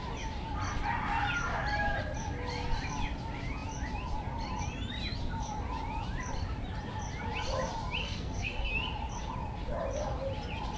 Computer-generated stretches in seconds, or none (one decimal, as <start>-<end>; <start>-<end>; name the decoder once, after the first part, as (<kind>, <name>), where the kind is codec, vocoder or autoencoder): 8.0-8.7 (codec, SNAC)